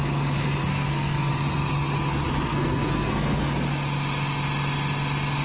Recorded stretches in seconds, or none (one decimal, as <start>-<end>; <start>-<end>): 0.0-0.7; 1.3-2.5; 3.4-5.4